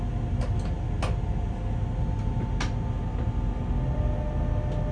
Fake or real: real